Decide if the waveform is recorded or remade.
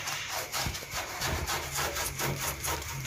remade